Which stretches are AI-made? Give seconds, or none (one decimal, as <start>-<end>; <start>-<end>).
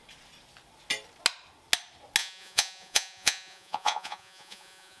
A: 2.2-5.0